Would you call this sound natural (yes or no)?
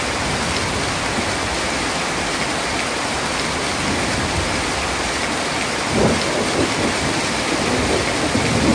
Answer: yes